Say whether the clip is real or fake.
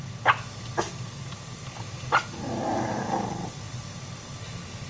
real